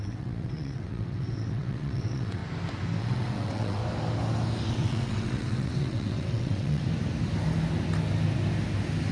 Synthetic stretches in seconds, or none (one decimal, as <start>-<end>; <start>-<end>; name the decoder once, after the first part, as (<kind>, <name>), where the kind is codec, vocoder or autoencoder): 0.0-2.4 (vocoder, WaveNeXt); 3.0-3.8; 4.7-6.8